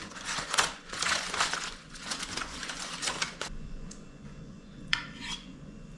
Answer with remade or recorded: remade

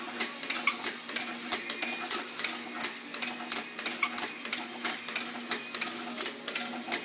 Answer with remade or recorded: recorded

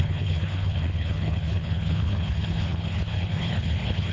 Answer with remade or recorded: remade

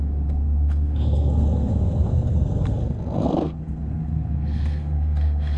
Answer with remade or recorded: remade